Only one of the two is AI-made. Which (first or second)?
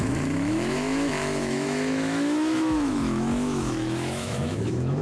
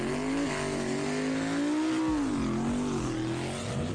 first